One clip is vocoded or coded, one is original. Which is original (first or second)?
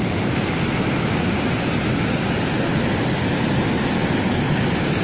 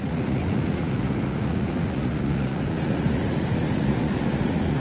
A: first